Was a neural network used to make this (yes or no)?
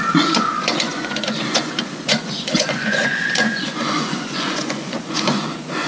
yes